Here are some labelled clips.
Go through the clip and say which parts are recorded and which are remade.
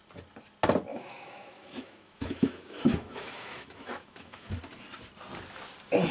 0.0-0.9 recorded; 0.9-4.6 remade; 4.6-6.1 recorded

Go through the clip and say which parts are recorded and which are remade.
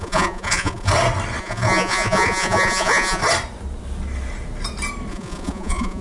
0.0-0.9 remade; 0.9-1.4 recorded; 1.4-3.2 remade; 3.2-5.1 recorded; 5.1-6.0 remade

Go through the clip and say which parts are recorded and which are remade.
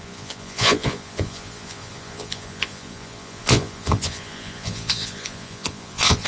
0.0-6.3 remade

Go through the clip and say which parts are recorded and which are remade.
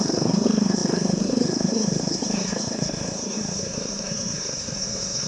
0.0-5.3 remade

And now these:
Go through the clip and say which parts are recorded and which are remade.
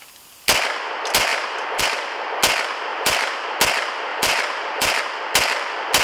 0.0-1.3 recorded; 1.3-1.8 remade; 1.8-2.9 recorded; 2.9-3.6 remade; 3.6-4.1 recorded; 4.1-5.0 remade; 5.0-6.0 recorded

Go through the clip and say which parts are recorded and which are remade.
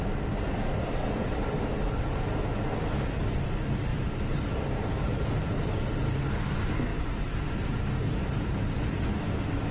0.0-1.0 recorded; 1.0-1.5 remade; 1.5-3.9 recorded; 3.9-5.3 remade; 5.3-6.9 recorded; 6.9-8.7 remade; 8.7-9.7 recorded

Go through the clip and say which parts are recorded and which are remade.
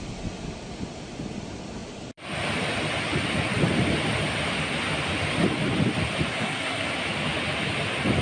0.0-6.3 recorded; 6.3-6.9 remade; 6.9-8.2 recorded